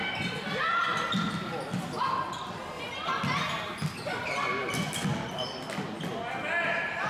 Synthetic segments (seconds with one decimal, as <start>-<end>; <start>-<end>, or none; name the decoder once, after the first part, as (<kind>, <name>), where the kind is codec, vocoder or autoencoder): none